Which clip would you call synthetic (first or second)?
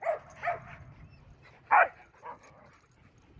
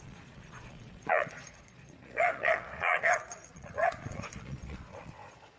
second